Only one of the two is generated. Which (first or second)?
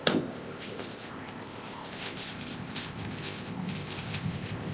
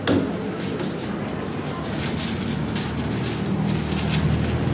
first